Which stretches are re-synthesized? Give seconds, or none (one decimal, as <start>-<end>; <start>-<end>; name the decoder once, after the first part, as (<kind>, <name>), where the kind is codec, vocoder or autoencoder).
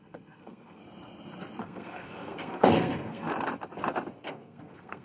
0.0-0.8 (codec, SNAC); 1.6-3.3; 4.3-5.0